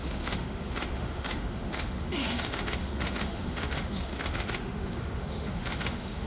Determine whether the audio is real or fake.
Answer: fake